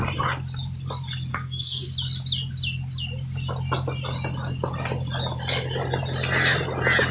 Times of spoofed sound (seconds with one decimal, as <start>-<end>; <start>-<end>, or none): 1.3-1.9

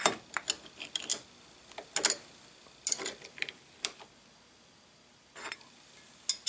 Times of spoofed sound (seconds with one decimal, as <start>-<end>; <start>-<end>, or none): none

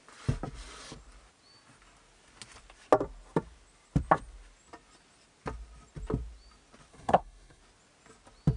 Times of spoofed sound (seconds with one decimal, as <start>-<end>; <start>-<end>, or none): 6.9-7.6

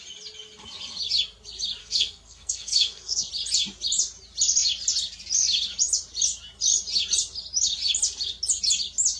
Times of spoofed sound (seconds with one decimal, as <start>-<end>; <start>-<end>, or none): 1.8-3.3